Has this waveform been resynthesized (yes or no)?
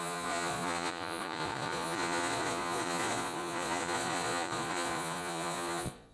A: yes